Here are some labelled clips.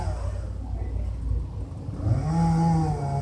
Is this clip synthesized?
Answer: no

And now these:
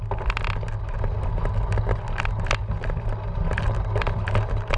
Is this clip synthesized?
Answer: no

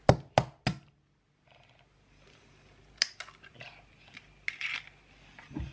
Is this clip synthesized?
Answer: no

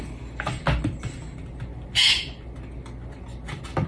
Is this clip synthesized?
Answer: no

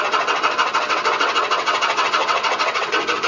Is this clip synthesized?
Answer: yes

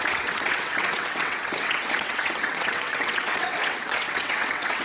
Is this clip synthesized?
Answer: yes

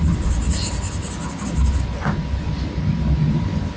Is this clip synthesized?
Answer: no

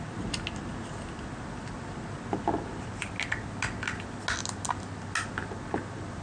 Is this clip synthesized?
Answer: no